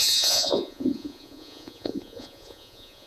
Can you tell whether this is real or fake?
fake